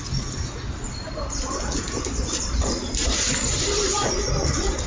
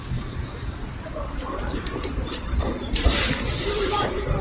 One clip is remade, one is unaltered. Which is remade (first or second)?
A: second